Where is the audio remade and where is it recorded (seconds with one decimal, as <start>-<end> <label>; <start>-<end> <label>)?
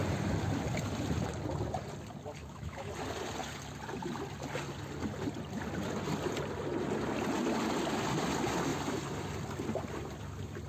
0.0-2.4 recorded; 2.4-2.9 remade; 2.9-10.7 recorded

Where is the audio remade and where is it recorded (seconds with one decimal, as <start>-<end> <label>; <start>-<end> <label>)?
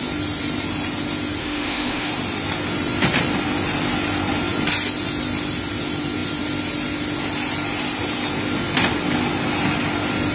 0.0-1.4 recorded; 1.4-2.1 remade; 2.1-10.3 recorded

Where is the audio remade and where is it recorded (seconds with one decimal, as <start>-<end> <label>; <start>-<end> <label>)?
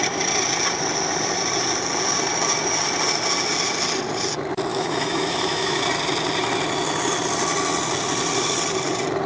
0.0-4.7 recorded; 4.7-5.8 remade; 5.8-9.3 recorded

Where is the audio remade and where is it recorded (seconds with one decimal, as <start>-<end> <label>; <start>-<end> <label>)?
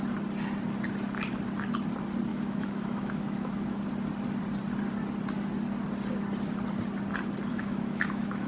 0.0-2.3 recorded; 2.3-3.9 remade; 3.9-7.5 recorded; 7.5-8.5 remade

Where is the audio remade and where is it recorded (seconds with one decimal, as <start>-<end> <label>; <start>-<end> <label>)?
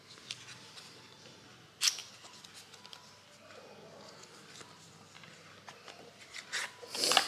0.0-7.3 recorded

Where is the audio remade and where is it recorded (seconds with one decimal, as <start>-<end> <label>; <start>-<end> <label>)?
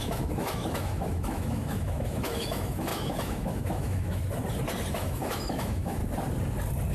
0.0-4.2 remade; 4.2-4.9 recorded; 4.9-6.0 remade; 6.0-6.9 recorded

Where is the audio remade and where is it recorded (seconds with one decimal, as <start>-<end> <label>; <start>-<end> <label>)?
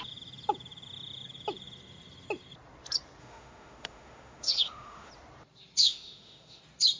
0.0-3.2 recorded; 3.2-5.1 remade; 5.1-5.8 recorded; 5.8-6.6 remade; 6.6-7.0 recorded